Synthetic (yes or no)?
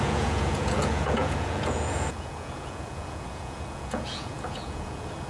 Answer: yes